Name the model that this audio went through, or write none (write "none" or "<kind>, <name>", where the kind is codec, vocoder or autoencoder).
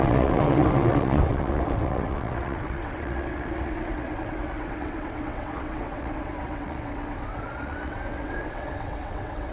vocoder, WaveNeXt